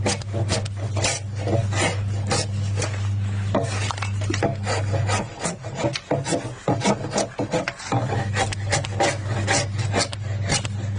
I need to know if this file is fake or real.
real